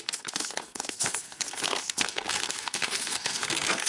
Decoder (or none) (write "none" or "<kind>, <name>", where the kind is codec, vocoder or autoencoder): codec, SNAC